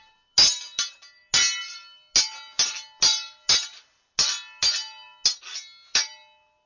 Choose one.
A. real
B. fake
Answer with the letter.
A